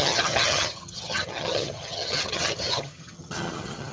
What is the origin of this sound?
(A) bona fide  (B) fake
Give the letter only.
B